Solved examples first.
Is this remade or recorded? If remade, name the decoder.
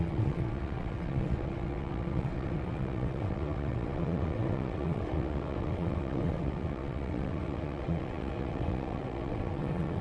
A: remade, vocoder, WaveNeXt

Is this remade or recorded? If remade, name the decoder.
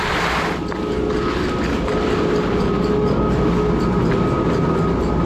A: recorded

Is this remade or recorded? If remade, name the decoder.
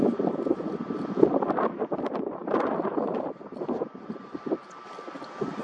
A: recorded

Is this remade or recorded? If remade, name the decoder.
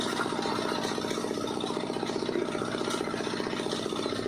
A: remade, vocoder, BigVGAN v2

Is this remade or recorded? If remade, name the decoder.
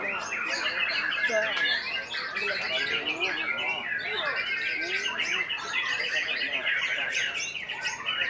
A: recorded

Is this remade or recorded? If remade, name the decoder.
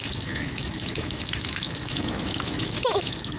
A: remade, autoencoder, DAC-VAE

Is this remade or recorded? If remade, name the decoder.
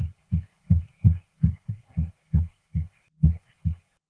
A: remade, codec, SNAC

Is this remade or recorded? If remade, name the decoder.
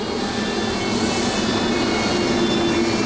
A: recorded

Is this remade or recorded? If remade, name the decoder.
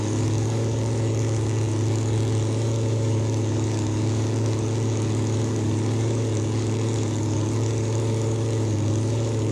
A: remade, codec, DAC